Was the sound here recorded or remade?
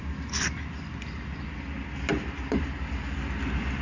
recorded